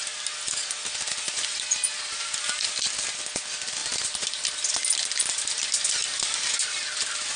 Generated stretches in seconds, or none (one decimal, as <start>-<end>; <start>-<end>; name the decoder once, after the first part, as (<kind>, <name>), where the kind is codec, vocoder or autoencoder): none